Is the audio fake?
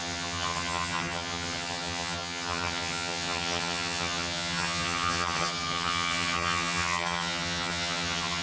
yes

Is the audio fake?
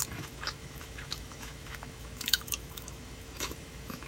yes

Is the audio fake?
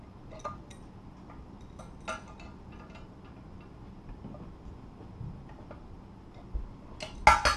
no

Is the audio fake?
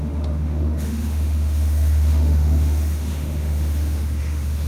yes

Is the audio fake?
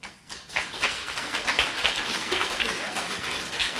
yes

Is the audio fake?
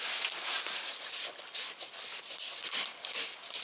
no